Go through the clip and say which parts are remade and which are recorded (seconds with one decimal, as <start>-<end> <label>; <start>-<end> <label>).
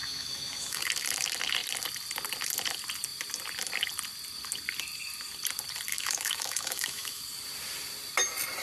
0.0-0.8 remade; 0.8-5.9 recorded; 5.9-7.2 remade; 7.2-8.6 recorded